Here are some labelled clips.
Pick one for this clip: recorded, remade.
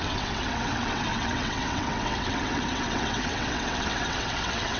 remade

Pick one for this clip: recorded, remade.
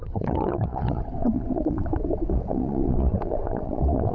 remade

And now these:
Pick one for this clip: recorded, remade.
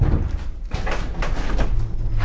recorded